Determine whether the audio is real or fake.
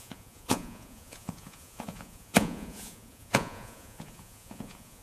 fake